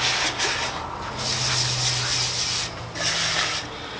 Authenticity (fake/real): real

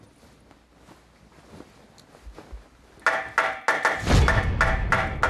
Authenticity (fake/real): real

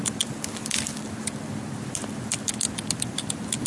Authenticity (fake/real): real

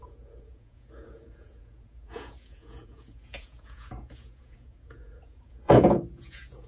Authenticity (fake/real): fake